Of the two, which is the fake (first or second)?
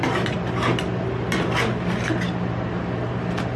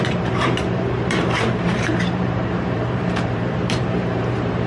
second